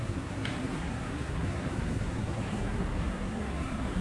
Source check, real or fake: fake